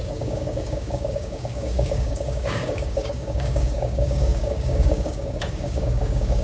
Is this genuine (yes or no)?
no